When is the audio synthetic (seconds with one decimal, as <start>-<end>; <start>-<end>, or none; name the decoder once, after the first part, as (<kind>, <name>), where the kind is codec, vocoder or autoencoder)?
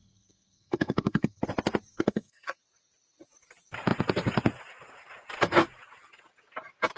0.0-1.4 (codec, SNAC); 1.9-2.6